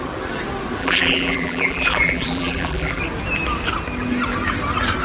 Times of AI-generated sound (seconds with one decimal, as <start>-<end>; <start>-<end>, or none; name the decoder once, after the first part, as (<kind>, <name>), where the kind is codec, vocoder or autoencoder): 0.8-3.0 (vocoder, BigVGAN v2)